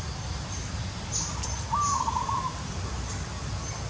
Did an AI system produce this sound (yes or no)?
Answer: no